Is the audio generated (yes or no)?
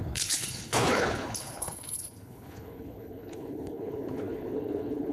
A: yes